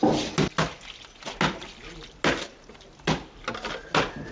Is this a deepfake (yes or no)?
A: no